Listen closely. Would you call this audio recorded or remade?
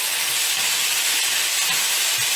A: recorded